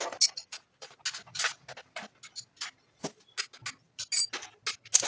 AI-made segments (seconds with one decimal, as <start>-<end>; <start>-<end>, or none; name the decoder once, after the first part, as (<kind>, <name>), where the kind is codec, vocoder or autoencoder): 0.4-1.0 (vocoder, Vocos)